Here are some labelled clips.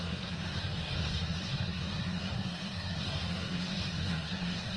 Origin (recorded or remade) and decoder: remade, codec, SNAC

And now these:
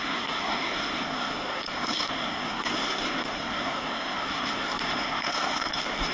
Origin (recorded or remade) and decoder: remade, codec, SNAC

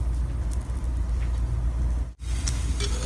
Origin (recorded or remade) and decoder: recorded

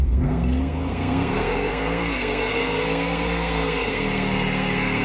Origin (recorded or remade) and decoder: remade, codec, SNAC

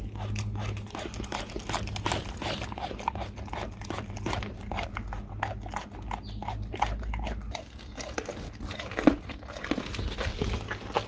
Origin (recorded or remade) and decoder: recorded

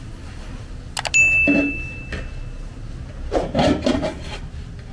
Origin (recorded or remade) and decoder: recorded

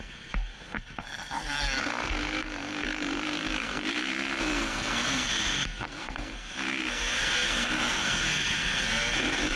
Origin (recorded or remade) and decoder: remade, codec, SNAC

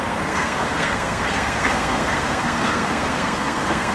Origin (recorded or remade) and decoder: remade, codec, SNAC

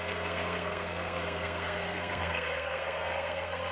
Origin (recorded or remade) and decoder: remade, codec, SNAC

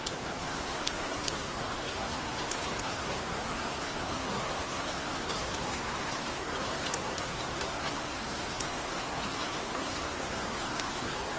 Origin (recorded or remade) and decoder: remade, codec, SNAC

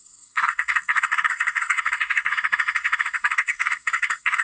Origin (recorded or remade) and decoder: remade, codec, SNAC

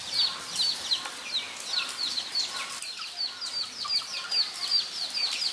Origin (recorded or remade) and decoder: recorded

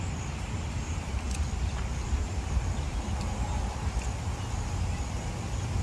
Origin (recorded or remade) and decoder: recorded